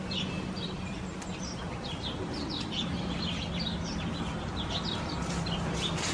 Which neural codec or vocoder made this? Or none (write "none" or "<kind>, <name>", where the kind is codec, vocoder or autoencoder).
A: none